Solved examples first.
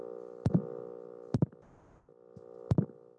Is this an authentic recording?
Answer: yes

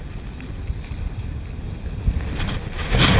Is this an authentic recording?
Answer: yes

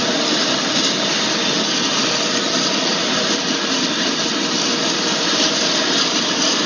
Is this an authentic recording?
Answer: yes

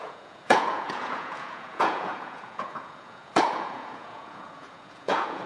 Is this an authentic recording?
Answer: no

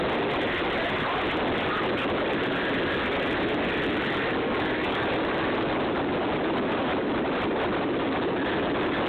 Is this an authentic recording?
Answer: yes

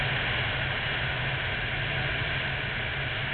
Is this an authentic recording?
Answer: yes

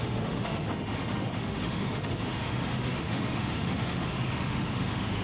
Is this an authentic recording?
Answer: no